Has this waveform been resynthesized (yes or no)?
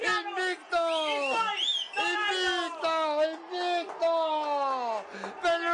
no